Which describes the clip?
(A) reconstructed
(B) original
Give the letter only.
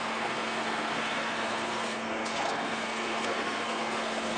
A